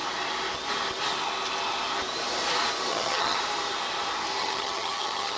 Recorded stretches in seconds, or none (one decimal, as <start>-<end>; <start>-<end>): 0.0-2.9; 3.4-4.4